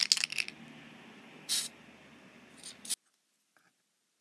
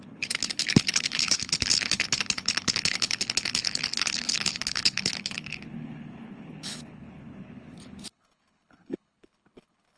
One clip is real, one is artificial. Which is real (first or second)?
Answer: first